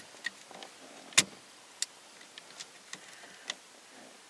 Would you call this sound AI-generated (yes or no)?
no